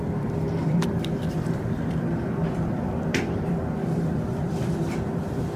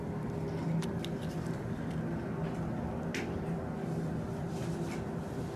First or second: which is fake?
first